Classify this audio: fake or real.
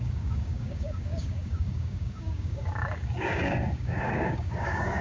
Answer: fake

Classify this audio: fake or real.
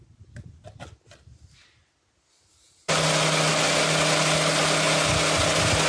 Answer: real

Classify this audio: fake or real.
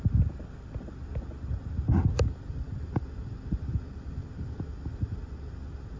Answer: real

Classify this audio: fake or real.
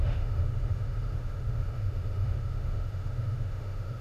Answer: fake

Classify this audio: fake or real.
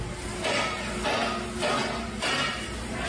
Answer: real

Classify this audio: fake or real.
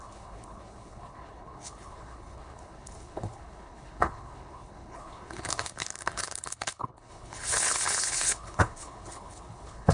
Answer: fake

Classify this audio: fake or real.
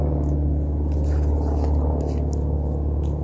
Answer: real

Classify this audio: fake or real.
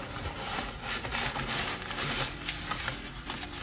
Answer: real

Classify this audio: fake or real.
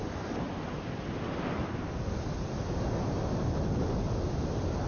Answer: real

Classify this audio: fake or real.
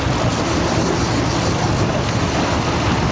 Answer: real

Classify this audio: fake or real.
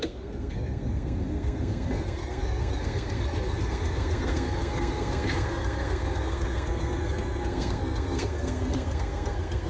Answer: fake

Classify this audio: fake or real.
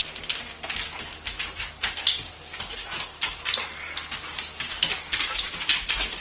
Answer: real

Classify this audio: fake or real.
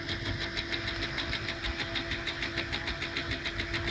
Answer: real